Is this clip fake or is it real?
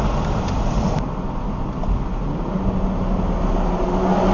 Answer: real